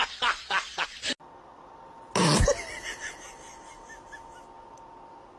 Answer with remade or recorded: recorded